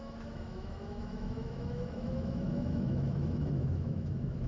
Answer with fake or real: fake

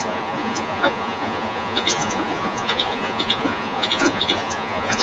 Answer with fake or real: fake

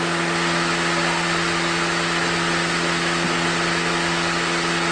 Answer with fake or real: real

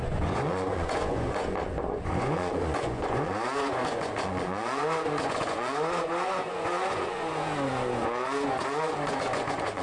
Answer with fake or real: fake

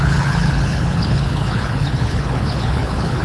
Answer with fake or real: fake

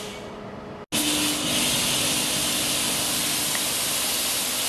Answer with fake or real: real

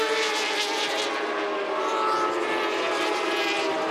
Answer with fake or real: real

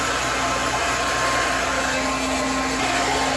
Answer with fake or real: real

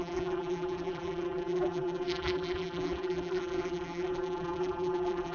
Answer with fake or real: fake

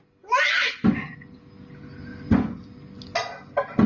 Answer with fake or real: real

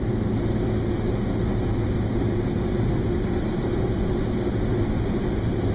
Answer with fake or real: real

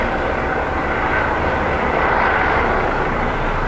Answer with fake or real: fake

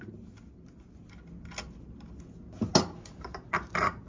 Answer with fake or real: real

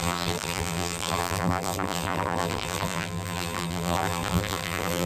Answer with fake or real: fake